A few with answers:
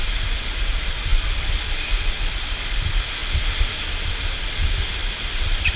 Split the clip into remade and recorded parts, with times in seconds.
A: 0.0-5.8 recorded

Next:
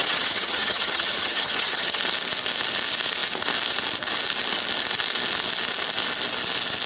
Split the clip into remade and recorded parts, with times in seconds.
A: 0.0-2.0 remade; 2.0-6.9 recorded

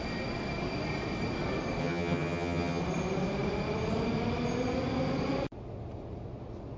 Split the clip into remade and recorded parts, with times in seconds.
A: 0.0-1.8 recorded; 1.8-2.8 remade; 2.8-6.8 recorded

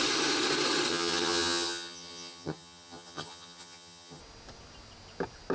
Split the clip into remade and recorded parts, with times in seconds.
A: 0.0-0.9 recorded; 0.9-4.2 remade; 4.2-5.5 recorded

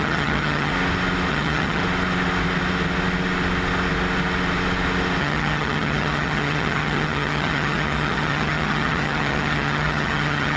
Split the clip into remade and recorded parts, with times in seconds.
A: 0.0-0.7 remade; 0.7-1.3 recorded; 1.3-1.8 remade; 1.8-5.2 recorded; 5.2-10.6 remade

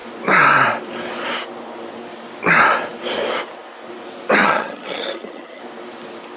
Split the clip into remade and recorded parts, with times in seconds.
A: 0.0-4.4 recorded; 4.4-5.6 remade; 5.6-6.4 recorded

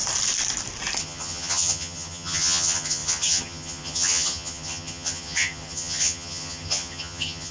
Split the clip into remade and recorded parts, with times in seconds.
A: 0.0-1.0 recorded; 1.0-7.5 remade